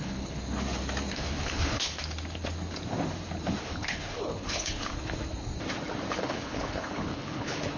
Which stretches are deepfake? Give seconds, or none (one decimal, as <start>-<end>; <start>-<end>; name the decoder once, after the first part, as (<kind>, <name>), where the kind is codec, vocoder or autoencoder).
0.0-0.4 (codec, HILCodec); 1.1-2.0; 3.6-4.9; 6.2-7.8